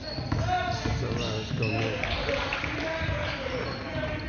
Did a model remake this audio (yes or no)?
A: no